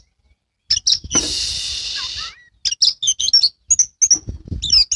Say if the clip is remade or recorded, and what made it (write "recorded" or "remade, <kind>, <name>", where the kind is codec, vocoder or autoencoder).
recorded